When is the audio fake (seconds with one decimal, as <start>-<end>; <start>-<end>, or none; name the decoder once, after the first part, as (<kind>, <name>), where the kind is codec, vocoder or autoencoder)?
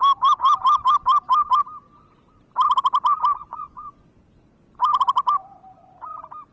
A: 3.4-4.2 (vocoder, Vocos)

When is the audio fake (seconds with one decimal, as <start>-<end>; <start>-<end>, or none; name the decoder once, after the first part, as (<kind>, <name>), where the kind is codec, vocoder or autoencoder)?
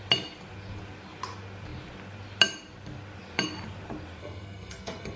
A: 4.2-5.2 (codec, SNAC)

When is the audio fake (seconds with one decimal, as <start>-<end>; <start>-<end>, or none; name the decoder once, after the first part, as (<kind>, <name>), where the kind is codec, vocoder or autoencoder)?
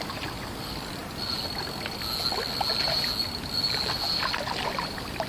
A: 0.0-1.0 (vocoder, BigVGAN v2); 4.2-5.3